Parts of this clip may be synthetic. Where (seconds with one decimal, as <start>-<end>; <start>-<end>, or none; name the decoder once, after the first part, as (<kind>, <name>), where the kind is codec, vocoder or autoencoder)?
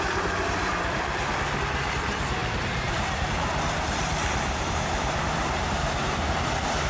2.4-6.5 (vocoder, BigVGAN v2)